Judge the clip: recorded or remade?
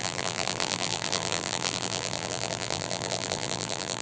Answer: remade